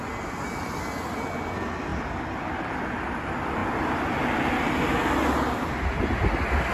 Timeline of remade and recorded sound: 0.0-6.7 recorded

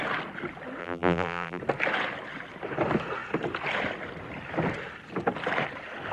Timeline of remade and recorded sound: 0.0-0.8 recorded; 0.8-1.6 remade; 1.6-6.1 recorded

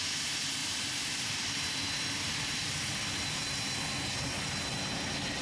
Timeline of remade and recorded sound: 0.0-0.6 recorded; 0.6-1.8 remade; 1.8-5.4 recorded